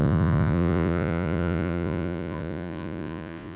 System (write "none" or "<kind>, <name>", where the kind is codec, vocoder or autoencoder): vocoder, Vocos